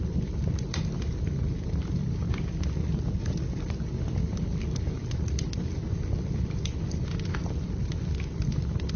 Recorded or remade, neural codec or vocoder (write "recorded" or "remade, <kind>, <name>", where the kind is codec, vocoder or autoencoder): recorded